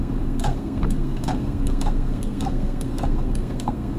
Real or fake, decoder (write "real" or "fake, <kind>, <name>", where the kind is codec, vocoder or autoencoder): fake, codec, SNAC